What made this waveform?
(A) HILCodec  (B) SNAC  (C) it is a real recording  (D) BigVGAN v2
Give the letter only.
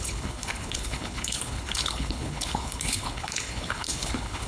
A